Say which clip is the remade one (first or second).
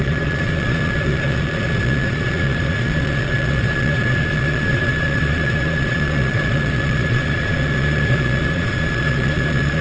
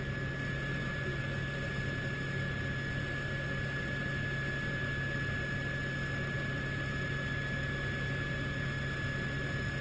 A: first